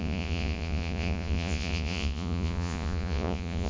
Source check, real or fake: fake